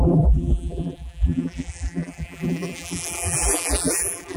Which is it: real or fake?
fake